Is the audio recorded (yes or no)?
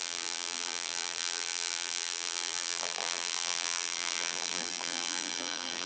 no